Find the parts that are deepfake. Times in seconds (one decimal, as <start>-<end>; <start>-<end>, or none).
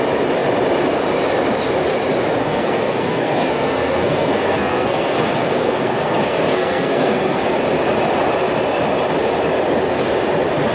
2.4-7.4